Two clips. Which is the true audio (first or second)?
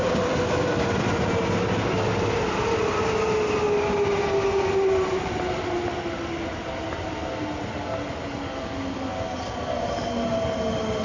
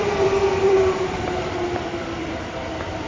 first